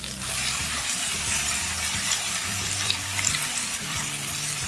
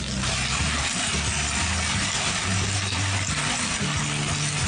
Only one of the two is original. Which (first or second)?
second